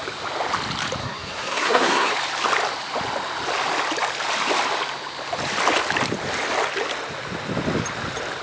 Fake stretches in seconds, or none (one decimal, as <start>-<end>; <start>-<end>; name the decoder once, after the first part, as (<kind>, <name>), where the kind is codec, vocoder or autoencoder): 1.0-2.1 (codec, SNAC)